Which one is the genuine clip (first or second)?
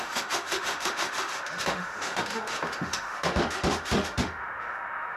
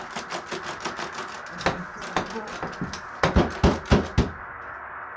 second